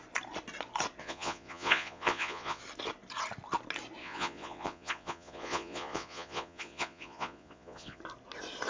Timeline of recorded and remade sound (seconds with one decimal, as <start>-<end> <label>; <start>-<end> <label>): 0.0-1.0 recorded; 1.0-2.6 remade; 2.6-4.0 recorded; 4.0-8.0 remade; 8.0-8.7 recorded